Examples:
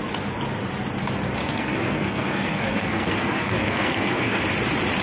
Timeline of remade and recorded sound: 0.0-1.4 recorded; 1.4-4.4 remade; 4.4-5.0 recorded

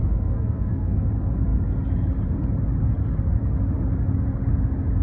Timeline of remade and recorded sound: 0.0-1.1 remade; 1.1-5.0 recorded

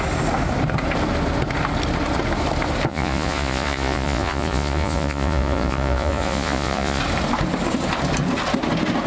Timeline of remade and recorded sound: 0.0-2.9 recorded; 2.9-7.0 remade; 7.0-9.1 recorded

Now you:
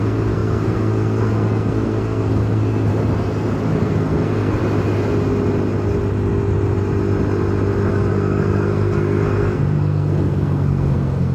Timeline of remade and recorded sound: 0.0-2.9 remade; 2.9-3.8 recorded; 3.8-4.6 remade; 4.6-7.9 recorded; 7.9-11.3 remade

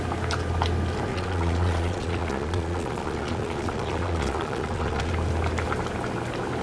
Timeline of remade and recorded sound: 0.0-1.1 recorded; 1.1-5.1 remade; 5.1-6.6 recorded